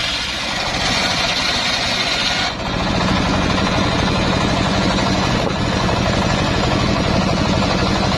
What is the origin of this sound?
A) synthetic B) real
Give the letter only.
A